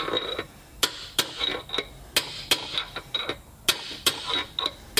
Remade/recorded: recorded